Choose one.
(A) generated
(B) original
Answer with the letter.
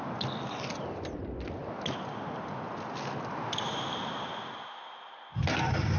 B